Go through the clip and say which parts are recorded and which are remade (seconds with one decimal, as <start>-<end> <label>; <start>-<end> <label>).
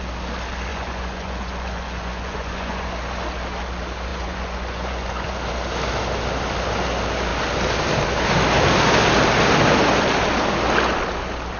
0.0-0.7 recorded; 0.7-2.9 remade; 2.9-4.1 recorded; 4.1-5.3 remade; 5.3-11.6 recorded